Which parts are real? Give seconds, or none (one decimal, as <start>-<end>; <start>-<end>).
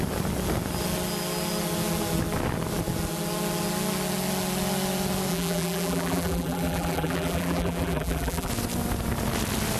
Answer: 0.0-5.3; 8.5-9.8